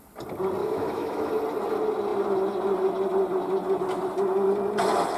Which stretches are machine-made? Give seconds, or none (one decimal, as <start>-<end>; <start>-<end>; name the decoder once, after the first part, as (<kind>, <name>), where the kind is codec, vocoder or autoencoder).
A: 0.6-1.3 (autoencoder, DAC-VAE)